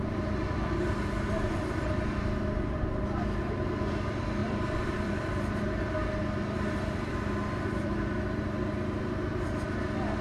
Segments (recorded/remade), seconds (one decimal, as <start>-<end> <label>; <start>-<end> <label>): 0.0-4.4 recorded; 4.4-5.1 remade; 5.1-10.2 recorded